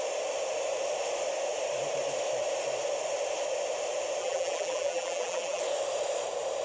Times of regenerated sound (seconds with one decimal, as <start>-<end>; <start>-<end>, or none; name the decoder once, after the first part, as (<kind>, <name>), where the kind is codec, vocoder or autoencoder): 4.2-5.6 (vocoder, BigVGAN v2)